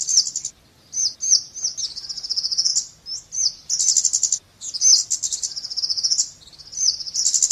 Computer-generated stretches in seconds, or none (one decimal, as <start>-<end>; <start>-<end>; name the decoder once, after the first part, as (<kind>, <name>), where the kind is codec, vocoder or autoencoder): none